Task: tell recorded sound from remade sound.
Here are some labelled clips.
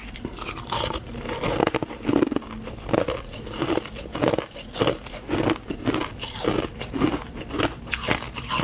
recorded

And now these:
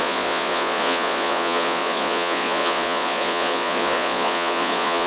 remade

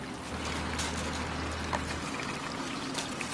recorded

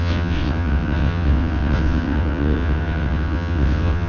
remade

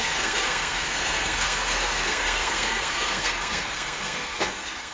remade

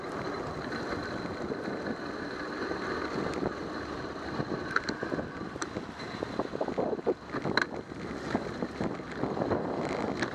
recorded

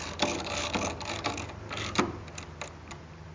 recorded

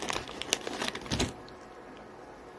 recorded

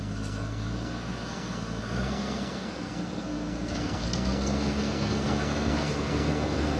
remade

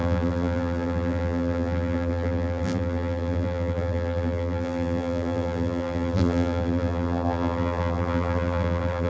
remade